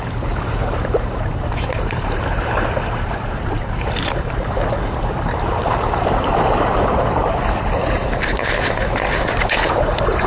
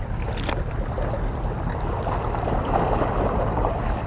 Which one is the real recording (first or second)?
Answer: second